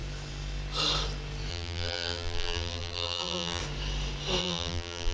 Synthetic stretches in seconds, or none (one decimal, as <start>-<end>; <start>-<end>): 1.5-3.6; 4.4-5.1